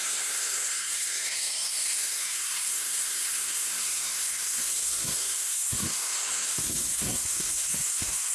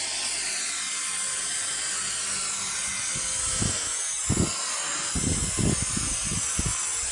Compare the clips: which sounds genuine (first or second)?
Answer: second